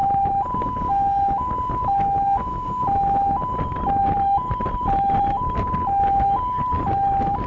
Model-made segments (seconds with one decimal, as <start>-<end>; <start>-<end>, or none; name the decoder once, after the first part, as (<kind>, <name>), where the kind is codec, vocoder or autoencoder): 0.0-0.9 (vocoder, BigVGAN v2); 4.0-7.5